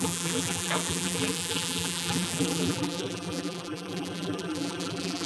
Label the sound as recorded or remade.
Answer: remade